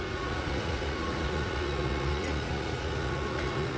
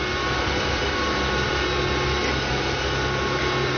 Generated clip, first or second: first